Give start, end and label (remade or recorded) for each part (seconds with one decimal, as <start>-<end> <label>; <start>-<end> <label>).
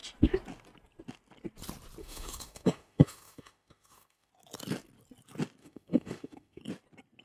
0.0-2.0 recorded; 2.0-4.3 remade; 4.3-5.6 recorded; 5.6-6.6 remade; 6.6-7.2 recorded